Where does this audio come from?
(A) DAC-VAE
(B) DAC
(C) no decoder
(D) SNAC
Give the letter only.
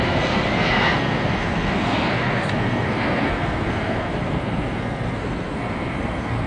D